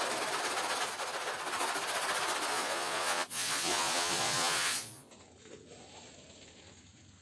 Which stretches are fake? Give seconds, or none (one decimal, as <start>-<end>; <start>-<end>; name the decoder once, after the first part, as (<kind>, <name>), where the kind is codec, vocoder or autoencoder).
2.5-5.1 (vocoder, Vocos)